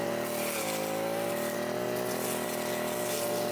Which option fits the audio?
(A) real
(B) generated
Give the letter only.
A